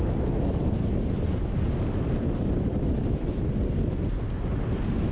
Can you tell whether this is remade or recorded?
recorded